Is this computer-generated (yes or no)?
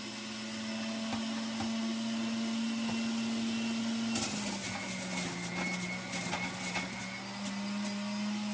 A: no